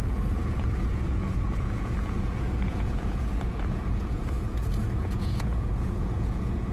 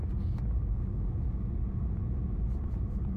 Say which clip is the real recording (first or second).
second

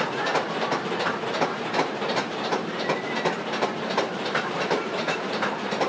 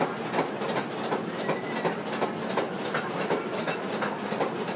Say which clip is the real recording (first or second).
second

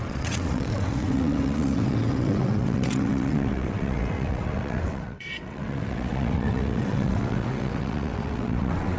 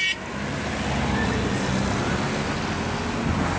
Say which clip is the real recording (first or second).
second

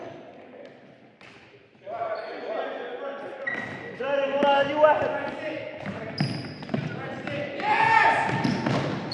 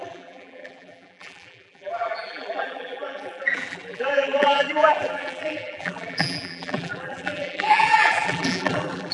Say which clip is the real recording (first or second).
first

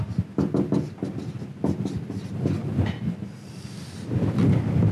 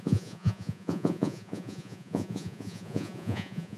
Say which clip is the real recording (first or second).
first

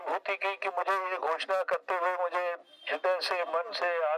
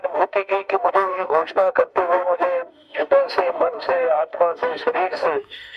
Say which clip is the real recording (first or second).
first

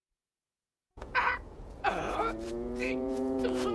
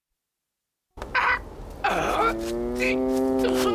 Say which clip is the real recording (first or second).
second